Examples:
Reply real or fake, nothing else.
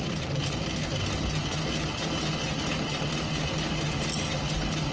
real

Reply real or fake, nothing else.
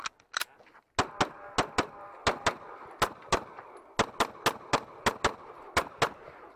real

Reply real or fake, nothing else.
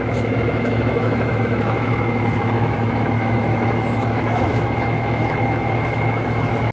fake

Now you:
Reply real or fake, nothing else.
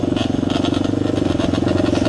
real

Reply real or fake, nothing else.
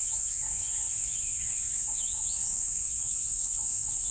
fake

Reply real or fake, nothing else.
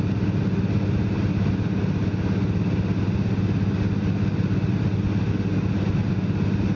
real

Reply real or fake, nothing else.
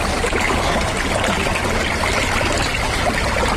real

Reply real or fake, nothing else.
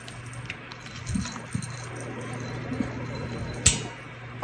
real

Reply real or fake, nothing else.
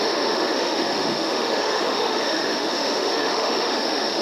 fake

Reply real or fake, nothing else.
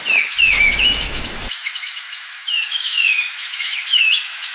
fake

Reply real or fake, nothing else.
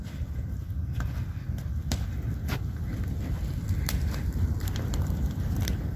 real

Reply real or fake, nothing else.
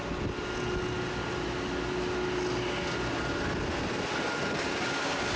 real